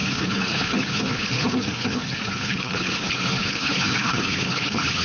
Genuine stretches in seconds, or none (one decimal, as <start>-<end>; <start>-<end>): none